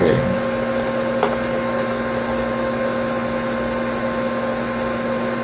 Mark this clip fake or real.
real